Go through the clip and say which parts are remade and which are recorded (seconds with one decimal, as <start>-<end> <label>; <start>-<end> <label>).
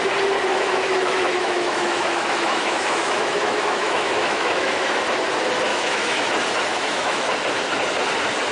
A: 0.0-0.5 recorded; 0.5-5.0 remade; 5.0-5.7 recorded; 5.7-6.3 remade; 6.3-6.7 recorded; 6.7-7.3 remade; 7.3-8.5 recorded